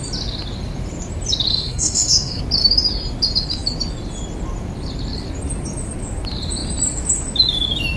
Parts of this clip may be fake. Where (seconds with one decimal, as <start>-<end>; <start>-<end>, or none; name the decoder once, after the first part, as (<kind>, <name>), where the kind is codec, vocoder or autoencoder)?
1.5-2.4 (codec, SNAC)